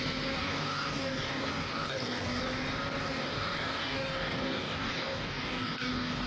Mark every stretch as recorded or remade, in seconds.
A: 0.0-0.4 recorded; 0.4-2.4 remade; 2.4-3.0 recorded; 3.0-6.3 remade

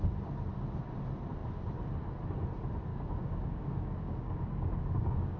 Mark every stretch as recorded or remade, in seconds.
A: 0.0-2.9 recorded; 2.9-5.4 remade

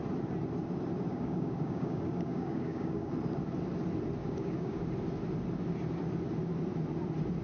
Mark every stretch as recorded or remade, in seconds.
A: 0.0-1.1 recorded; 1.1-3.1 remade; 3.1-4.2 recorded; 4.2-4.8 remade; 4.8-7.4 recorded

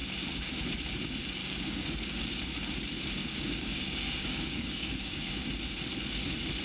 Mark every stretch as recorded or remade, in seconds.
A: 0.0-1.4 recorded; 1.4-1.9 remade; 1.9-3.2 recorded; 3.2-5.5 remade; 5.5-6.6 recorded

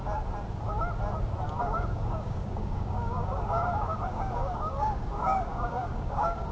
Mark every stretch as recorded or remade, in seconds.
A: 0.0-1.6 recorded; 1.6-6.5 remade

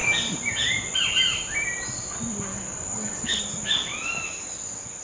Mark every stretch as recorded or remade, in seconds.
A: 0.0-2.5 recorded; 2.5-3.4 remade; 3.4-5.0 recorded